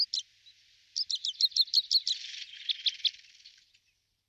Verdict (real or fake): real